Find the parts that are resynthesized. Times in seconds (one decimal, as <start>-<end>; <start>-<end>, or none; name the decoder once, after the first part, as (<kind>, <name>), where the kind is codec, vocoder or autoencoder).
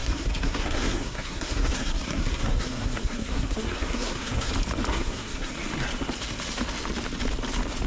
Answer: 0.0-4.5 (codec, SNAC); 4.9-5.5